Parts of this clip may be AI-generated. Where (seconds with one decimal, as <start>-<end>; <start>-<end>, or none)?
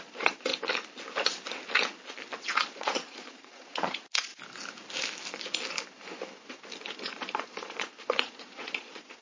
0.0-0.5; 2.4-4.3; 7.0-9.2